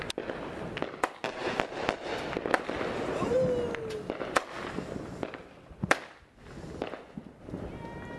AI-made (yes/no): no